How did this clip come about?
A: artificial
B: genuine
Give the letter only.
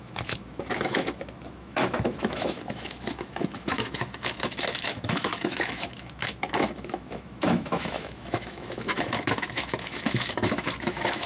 A